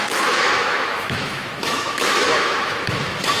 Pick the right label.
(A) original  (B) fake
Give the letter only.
B